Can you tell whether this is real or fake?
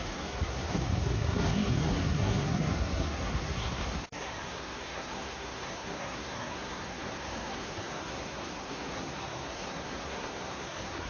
fake